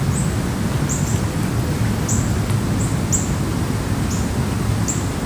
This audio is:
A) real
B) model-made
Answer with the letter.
A